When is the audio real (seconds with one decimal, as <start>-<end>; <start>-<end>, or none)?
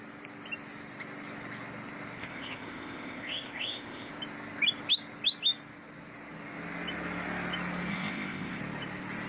0.0-2.2; 4.1-7.9; 8.6-9.3